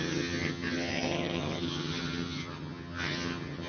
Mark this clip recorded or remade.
remade